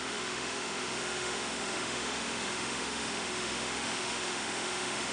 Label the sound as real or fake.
fake